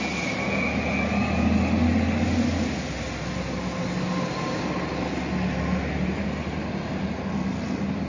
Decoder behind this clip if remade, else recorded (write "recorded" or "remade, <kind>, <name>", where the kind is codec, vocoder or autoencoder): recorded